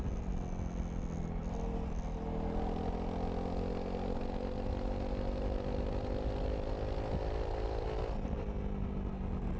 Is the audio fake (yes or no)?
no